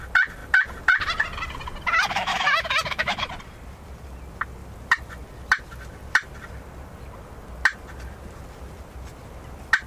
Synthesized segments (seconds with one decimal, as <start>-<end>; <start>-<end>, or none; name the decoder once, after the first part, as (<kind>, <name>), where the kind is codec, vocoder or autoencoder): 2.1-3.3 (autoencoder, DAC-VAE)